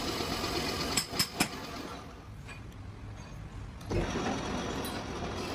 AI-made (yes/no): no